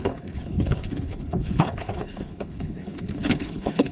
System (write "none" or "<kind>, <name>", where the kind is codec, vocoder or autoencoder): codec, HILCodec